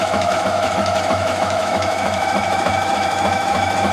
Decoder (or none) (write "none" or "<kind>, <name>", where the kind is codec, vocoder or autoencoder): autoencoder, DAC-VAE